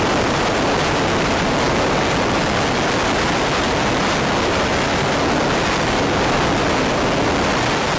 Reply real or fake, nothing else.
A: real